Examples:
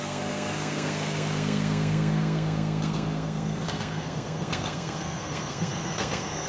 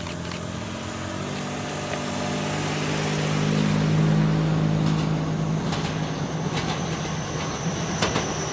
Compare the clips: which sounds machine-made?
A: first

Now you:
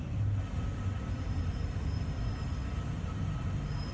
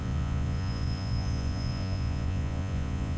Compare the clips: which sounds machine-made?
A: second